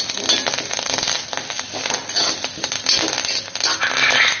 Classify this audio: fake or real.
real